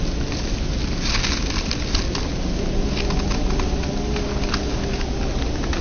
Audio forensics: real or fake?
real